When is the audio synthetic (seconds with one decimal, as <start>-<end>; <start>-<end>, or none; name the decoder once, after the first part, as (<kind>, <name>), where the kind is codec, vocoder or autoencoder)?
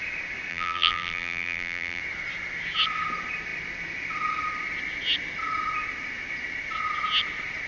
0.5-2.0 (vocoder, BigVGAN v2)